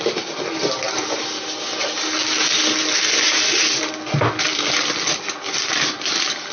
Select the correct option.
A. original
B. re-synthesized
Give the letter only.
A